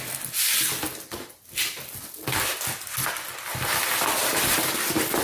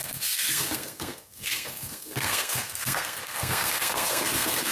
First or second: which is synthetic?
second